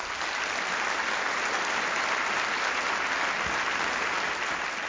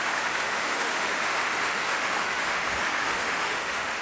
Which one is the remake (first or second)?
second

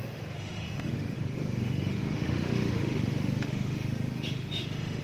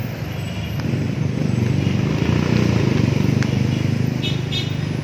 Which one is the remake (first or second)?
first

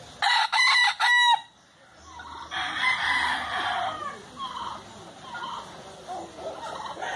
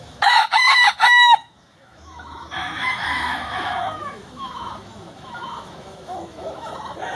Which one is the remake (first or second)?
second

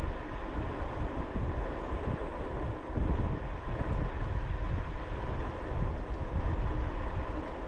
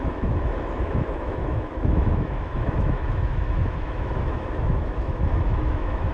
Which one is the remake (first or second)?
second